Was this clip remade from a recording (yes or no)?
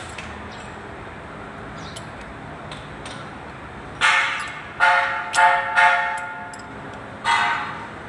no